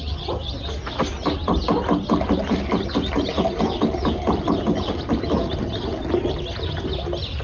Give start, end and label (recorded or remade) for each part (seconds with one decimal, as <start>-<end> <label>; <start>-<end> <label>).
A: 0.0-7.4 recorded

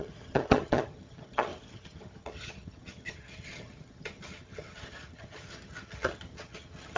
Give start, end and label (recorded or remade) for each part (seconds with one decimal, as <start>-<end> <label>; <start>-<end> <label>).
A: 0.0-7.0 remade

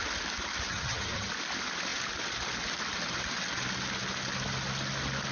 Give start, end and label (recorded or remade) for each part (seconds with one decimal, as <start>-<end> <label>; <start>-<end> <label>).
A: 0.0-0.7 recorded; 0.7-1.3 remade; 1.3-5.3 recorded

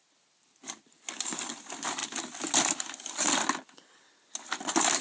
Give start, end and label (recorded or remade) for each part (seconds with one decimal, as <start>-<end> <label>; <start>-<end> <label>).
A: 0.0-5.0 recorded

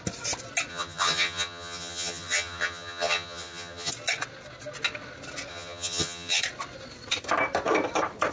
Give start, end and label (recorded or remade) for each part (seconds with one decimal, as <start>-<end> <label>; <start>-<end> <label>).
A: 0.0-0.7 recorded; 0.7-3.9 remade; 3.9-5.5 recorded; 5.5-6.4 remade; 6.4-8.3 recorded

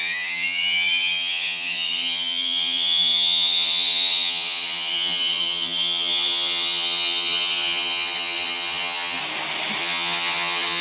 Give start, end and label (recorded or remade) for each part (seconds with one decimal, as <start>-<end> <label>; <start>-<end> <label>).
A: 0.0-9.2 remade; 9.2-9.8 recorded; 9.8-10.8 remade